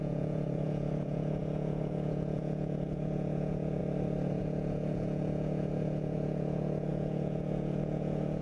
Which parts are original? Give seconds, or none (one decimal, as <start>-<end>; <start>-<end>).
3.8-4.4